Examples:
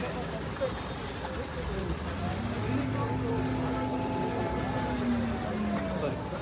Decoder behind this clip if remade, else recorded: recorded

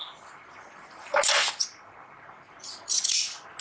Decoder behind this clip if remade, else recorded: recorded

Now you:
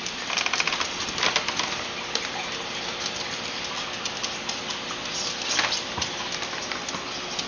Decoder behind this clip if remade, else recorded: recorded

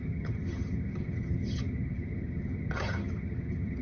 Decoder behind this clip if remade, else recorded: remade, vocoder, HiFi-GAN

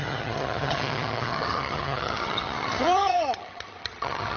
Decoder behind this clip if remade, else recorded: remade, vocoder, HiFi-GAN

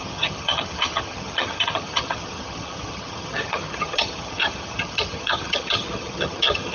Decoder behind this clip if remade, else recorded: remade, vocoder, HiFi-GAN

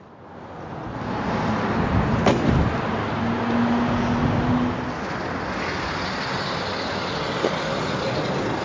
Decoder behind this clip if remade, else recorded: recorded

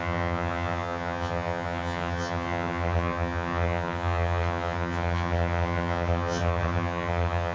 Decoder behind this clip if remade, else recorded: remade, vocoder, HiFi-GAN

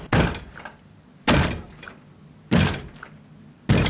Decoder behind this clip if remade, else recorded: recorded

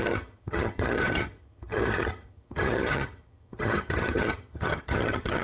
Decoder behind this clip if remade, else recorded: remade, vocoder, HiFi-GAN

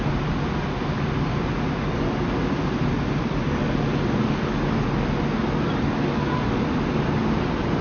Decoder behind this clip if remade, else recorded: recorded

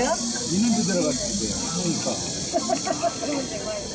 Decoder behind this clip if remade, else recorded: recorded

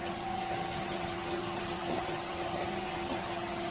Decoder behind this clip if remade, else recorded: remade, vocoder, HiFi-GAN